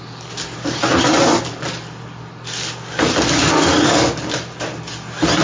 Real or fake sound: real